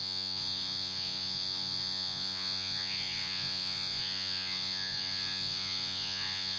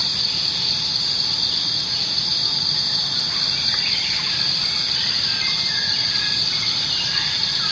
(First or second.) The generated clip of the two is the first